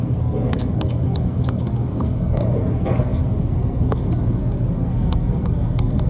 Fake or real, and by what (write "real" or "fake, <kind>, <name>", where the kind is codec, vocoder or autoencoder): fake, codec, SNAC